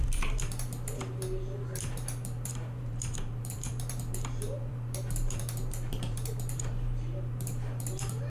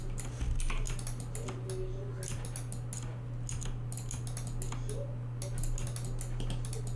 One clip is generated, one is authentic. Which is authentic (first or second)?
second